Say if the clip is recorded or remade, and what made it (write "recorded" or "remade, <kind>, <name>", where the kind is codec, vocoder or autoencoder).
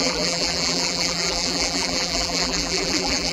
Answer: remade, vocoder, BigVGAN v2